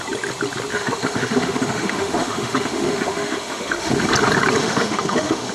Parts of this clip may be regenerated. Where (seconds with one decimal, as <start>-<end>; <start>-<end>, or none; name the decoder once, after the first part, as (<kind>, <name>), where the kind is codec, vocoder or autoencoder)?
0.7-4.0 (autoencoder, DAC-VAE); 4.6-5.5